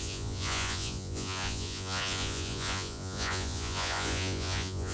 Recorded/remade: remade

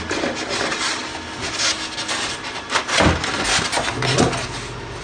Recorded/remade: recorded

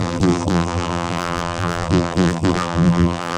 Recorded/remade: remade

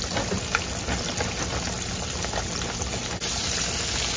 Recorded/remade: recorded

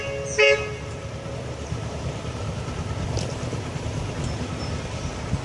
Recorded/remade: recorded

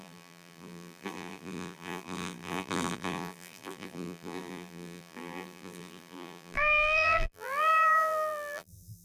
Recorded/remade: remade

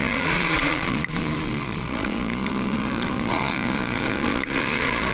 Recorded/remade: remade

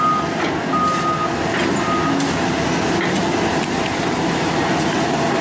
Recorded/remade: recorded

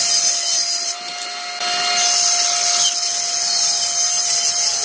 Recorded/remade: recorded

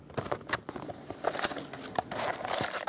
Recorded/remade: recorded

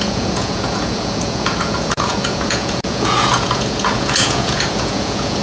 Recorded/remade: remade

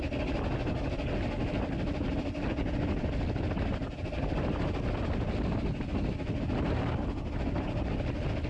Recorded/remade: recorded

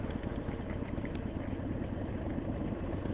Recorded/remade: recorded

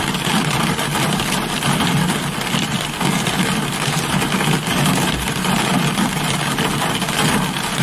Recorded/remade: recorded